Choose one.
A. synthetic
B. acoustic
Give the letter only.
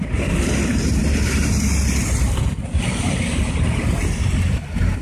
A